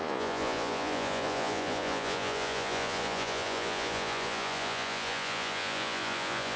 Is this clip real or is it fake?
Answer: fake